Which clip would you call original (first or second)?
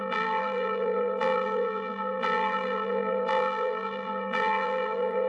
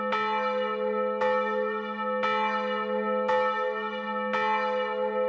second